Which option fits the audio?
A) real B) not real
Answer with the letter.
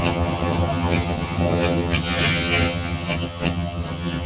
B